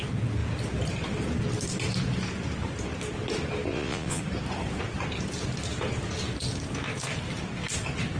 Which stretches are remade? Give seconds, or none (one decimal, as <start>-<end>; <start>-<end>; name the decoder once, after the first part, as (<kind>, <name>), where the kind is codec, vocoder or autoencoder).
3.7-4.2 (vocoder, Vocos)